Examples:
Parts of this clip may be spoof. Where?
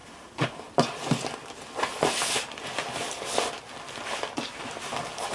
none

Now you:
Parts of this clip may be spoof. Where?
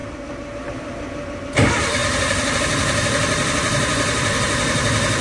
0.6-5.2 (vocoder, BigVGAN v2)